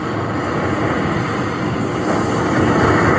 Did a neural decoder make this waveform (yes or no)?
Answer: no